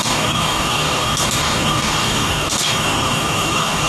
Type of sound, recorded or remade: remade